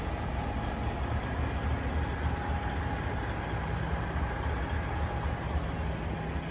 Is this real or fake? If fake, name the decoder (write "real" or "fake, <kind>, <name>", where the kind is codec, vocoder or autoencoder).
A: real